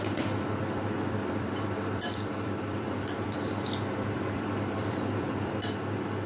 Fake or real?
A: fake